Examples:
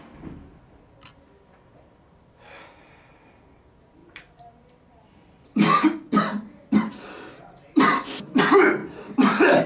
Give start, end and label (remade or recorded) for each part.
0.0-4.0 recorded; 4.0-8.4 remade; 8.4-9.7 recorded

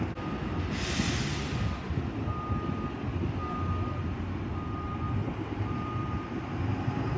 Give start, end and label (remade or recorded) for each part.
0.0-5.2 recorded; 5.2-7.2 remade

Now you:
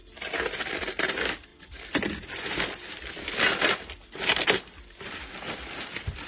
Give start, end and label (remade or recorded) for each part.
0.0-0.7 recorded; 0.7-6.3 remade

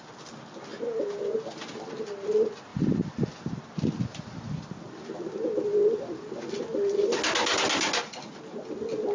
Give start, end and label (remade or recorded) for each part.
0.0-2.7 recorded; 2.7-4.6 remade; 4.6-9.1 recorded

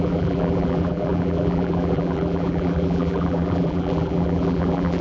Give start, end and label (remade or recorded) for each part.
0.0-5.0 remade

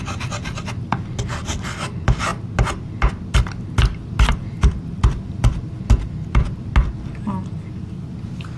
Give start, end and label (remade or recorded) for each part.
0.0-4.3 recorded; 4.3-5.6 remade; 5.6-8.6 recorded

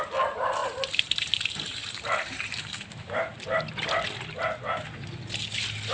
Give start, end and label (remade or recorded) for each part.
0.0-0.6 recorded; 0.6-3.6 remade; 3.6-5.9 recorded